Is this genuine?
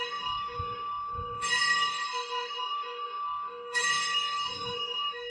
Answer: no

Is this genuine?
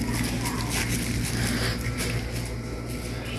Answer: yes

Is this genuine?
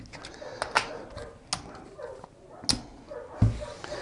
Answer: yes